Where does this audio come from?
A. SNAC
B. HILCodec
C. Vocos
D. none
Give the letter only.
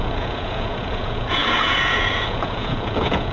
C